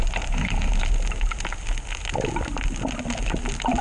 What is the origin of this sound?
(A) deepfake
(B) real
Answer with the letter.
B